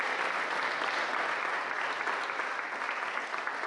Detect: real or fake real